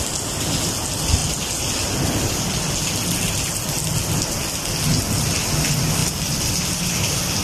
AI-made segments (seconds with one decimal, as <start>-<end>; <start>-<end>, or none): none